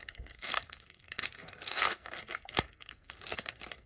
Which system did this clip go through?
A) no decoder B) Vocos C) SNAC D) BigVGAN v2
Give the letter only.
C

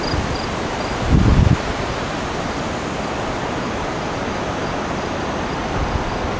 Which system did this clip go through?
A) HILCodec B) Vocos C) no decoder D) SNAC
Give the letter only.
C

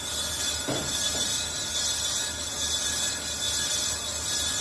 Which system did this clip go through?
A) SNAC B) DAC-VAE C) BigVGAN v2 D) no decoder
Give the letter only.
D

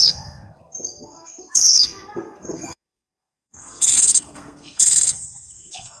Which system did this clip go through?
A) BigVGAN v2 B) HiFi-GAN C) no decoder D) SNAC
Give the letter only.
D